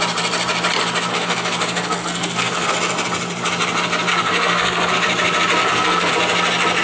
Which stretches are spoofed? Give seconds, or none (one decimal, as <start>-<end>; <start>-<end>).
1.1-2.7; 4.1-4.9; 5.6-6.1